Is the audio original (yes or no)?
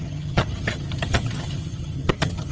no